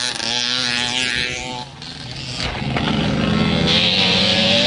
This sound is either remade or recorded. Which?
recorded